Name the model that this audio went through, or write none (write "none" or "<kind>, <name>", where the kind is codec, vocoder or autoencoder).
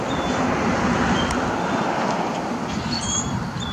none